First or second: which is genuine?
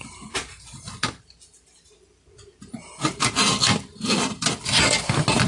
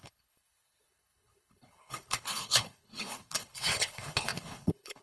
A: first